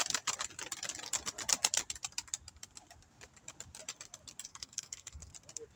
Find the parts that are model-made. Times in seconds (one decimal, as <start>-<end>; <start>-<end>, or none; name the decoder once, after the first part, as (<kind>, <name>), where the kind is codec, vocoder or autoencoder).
4.5-5.3 (codec, SNAC)